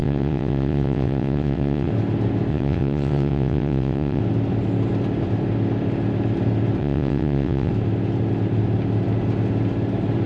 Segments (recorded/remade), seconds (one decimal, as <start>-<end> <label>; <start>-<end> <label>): 0.0-1.9 remade; 1.9-2.5 recorded; 2.5-4.2 remade; 4.2-6.8 recorded; 6.8-7.7 remade; 7.7-10.3 recorded